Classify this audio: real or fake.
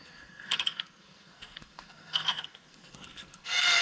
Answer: fake